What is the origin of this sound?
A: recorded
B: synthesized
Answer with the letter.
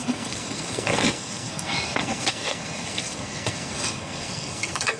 B